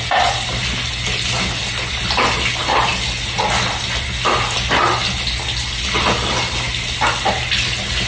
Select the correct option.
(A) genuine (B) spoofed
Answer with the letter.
A